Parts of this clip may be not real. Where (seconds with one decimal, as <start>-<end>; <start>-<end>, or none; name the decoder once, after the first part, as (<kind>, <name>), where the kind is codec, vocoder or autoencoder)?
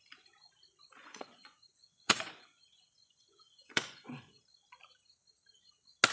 1.0-4.4 (vocoder, Vocos)